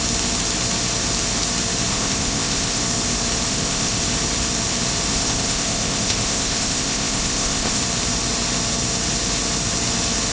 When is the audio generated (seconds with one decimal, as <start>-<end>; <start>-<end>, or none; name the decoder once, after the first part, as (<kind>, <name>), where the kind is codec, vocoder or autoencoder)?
1.9-2.8 (codec, ZipCodec); 3.5-4.0; 5.1-7.8